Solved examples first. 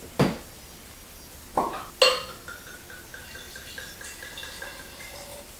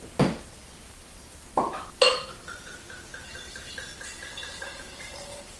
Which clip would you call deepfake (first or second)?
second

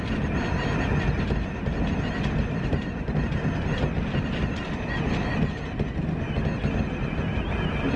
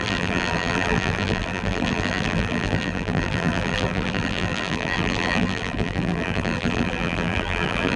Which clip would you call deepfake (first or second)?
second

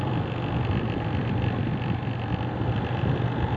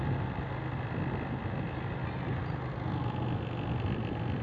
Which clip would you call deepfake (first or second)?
first